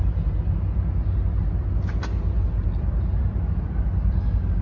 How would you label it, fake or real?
real